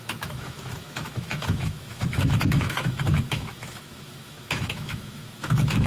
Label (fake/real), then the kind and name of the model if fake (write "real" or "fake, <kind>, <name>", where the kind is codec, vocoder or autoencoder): fake, autoencoder, DAC-VAE